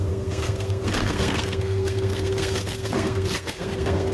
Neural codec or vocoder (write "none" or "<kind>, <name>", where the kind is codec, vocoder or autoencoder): codec, SNAC